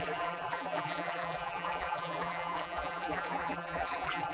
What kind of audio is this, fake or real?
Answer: fake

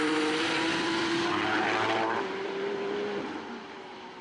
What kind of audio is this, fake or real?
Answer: fake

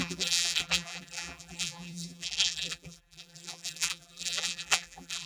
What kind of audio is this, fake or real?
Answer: fake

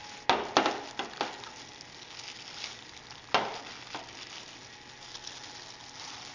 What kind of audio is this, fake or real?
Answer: real